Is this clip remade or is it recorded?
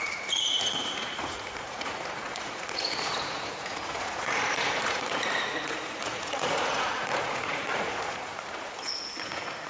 remade